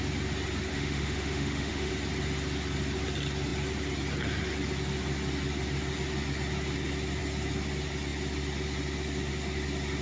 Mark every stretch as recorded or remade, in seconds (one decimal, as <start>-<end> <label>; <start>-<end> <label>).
0.0-0.7 recorded; 0.7-1.9 remade; 1.9-10.0 recorded